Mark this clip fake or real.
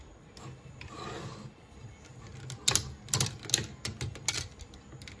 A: real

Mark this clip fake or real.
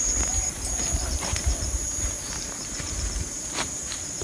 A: fake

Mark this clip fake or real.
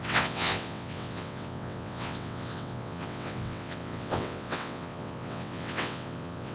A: fake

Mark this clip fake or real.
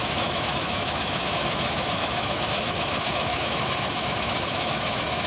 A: fake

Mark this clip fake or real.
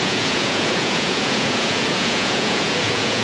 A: fake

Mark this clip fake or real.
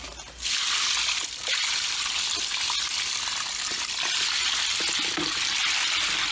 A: real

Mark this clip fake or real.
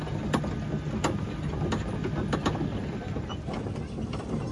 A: real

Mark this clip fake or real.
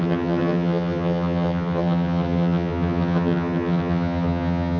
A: fake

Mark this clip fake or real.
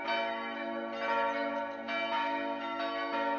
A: real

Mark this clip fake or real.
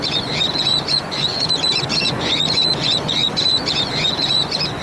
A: fake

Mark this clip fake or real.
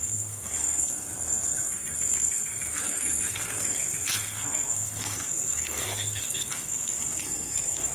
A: fake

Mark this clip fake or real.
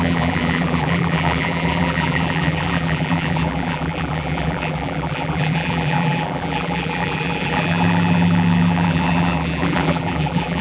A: fake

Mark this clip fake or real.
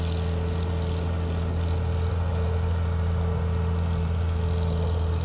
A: real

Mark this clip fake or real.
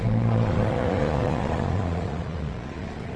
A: fake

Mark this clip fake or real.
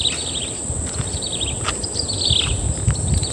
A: real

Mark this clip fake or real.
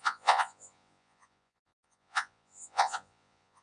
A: fake